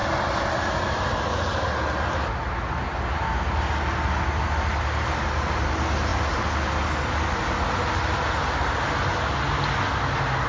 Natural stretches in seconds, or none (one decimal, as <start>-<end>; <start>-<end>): 0.0-10.5